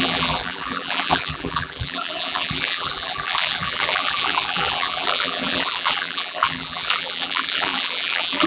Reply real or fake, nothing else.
fake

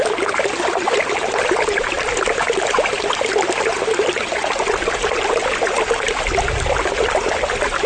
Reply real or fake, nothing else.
real